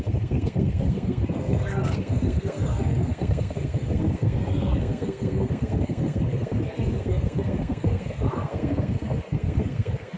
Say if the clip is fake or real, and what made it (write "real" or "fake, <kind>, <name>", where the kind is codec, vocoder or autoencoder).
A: fake, codec, SNAC